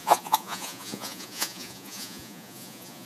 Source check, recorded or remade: remade